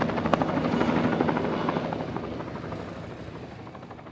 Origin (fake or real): real